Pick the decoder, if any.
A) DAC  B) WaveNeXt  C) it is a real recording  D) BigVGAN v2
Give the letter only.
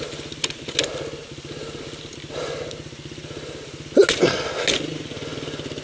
C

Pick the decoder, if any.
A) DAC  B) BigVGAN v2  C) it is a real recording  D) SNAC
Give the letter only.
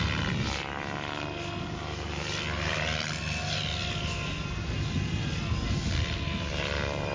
C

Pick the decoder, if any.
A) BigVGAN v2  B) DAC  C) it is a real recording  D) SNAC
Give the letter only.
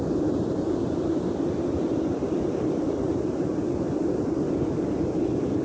C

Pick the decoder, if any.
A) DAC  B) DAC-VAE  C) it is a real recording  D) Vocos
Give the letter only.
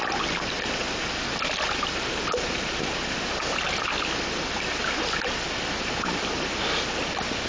C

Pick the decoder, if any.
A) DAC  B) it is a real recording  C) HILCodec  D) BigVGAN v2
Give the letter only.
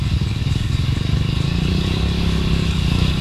A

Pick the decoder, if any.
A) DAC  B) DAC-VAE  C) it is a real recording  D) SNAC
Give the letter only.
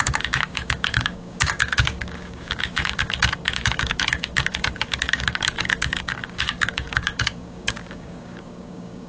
A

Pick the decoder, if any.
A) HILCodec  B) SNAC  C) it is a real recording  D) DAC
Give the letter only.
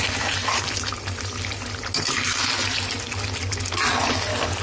C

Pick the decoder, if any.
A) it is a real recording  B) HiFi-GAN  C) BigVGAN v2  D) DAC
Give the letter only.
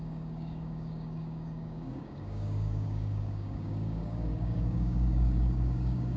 D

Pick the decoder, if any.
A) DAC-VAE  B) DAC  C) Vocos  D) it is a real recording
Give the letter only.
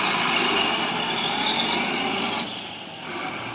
D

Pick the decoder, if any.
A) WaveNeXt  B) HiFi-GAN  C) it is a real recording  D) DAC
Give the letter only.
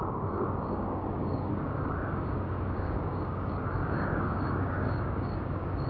D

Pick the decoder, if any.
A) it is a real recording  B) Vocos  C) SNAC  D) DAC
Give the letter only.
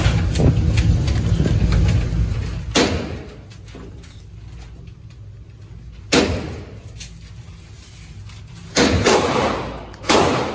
A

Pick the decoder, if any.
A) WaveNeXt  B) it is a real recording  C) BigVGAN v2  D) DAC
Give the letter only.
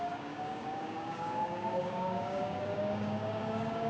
D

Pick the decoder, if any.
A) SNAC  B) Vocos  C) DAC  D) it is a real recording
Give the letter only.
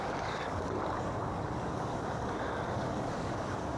C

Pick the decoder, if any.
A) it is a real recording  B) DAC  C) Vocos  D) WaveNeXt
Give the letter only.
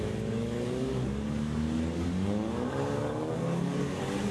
B